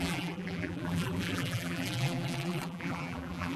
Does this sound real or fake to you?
fake